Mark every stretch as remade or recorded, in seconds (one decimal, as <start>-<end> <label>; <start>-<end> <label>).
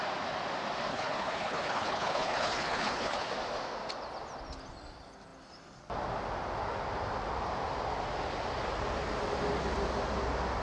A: 0.0-0.9 recorded; 0.9-3.3 remade; 3.3-10.6 recorded